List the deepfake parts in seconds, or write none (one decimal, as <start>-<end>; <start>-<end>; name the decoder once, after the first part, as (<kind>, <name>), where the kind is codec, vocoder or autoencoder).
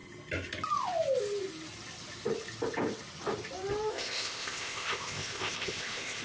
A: 3.9-6.2 (codec, ZipCodec)